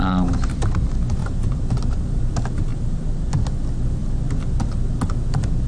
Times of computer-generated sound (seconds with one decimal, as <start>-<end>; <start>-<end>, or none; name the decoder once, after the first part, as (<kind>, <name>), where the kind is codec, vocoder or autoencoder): 1.2-2.3 (vocoder, BigVGAN v2); 2.7-3.3